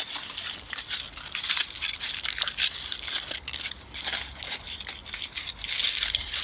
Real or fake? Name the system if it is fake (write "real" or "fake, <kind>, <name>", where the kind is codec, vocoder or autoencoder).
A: real